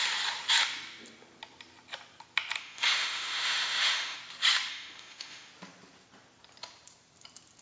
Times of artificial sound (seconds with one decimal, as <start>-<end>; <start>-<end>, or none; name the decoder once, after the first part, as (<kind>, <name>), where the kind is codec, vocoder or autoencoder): 2.6-4.2 (autoencoder, DAC-VAE); 4.7-5.5